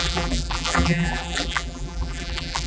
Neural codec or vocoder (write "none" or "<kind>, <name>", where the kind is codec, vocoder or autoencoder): vocoder, BigVGAN v2